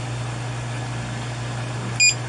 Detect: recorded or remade recorded